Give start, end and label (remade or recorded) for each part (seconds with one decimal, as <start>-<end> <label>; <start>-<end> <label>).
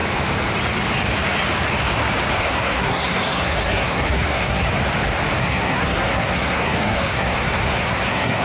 0.0-2.4 recorded; 2.4-4.7 remade; 4.7-5.4 recorded; 5.4-8.4 remade